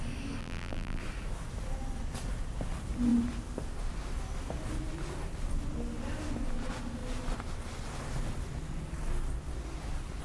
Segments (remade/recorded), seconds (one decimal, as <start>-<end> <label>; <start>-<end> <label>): 0.0-0.4 recorded; 0.4-1.0 remade; 1.0-10.2 recorded